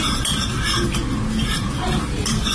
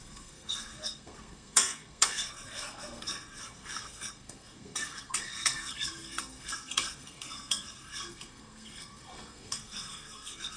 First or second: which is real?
first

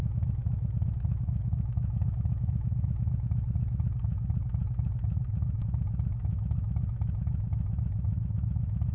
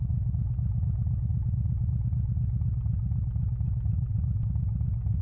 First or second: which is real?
second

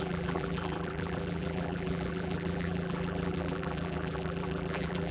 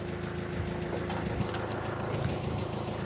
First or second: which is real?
second